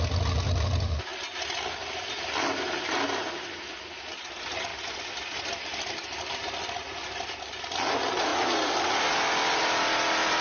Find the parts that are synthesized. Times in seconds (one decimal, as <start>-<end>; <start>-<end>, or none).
none